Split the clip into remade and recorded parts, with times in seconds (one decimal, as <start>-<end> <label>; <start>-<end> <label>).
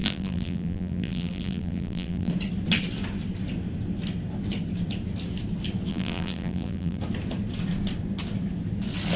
0.0-2.3 remade; 2.3-5.9 recorded; 5.9-7.0 remade; 7.0-9.2 recorded